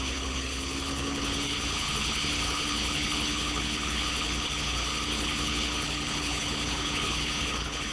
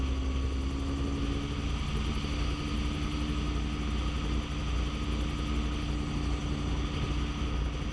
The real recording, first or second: second